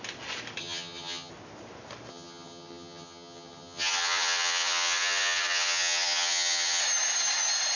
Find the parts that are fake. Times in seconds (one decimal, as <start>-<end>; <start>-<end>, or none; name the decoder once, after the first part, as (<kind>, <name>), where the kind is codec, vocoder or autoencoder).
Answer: 0.6-1.3 (vocoder, HiFi-GAN); 2.1-6.8